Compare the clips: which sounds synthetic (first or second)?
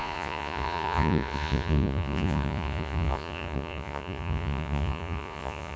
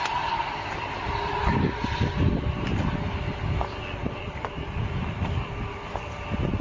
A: first